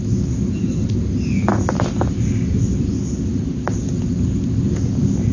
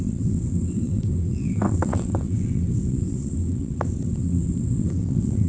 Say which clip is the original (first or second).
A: first